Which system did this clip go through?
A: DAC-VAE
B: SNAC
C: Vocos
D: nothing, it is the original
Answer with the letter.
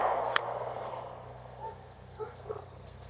B